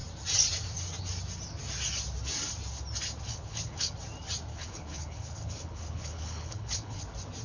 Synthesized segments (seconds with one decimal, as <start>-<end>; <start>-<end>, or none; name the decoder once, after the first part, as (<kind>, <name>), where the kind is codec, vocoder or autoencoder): 3.3-3.9 (codec, HILCodec); 4.5-7.0